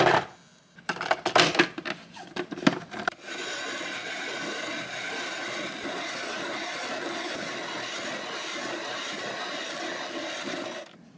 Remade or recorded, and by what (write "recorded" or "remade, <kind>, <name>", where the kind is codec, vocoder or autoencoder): recorded